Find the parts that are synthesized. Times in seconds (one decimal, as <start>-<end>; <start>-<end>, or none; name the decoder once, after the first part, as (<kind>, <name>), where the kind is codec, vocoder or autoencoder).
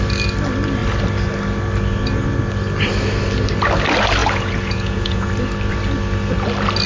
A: 4.2-5.3 (vocoder, Vocos)